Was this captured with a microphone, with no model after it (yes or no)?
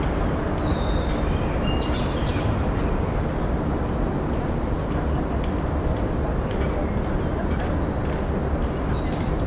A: yes